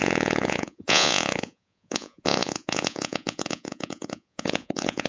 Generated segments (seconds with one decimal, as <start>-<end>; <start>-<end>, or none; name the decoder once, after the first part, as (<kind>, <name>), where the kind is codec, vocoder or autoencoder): 0.0-5.1 (vocoder, Vocos)